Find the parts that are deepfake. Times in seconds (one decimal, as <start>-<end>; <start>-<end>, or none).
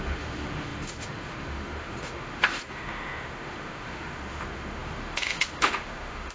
0.0-6.3